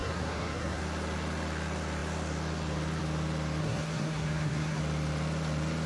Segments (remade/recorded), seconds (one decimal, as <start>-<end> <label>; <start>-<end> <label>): 0.0-0.8 remade; 0.8-3.6 recorded; 3.6-4.8 remade; 4.8-5.9 recorded

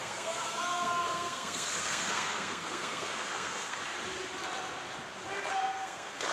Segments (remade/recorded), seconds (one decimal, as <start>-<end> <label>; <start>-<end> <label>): 0.0-3.8 remade; 3.8-5.5 recorded; 5.5-6.3 remade

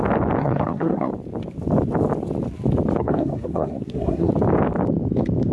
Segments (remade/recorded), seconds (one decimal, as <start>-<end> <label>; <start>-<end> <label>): 0.0-0.4 recorded; 0.4-1.1 remade; 1.1-3.0 recorded; 3.0-4.3 remade; 4.3-5.5 recorded